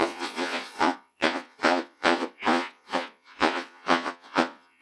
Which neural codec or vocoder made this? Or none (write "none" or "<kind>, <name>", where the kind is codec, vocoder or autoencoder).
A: vocoder, Vocos